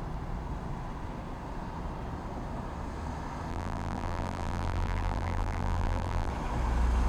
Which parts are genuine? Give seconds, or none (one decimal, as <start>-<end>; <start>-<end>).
0.0-3.5; 6.3-7.1